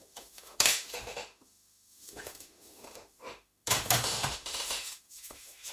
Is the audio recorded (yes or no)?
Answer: no